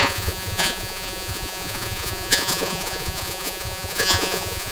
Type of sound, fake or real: fake